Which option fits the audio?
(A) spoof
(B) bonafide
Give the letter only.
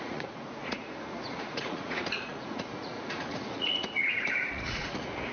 A